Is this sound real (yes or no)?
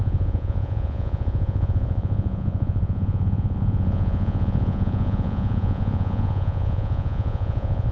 no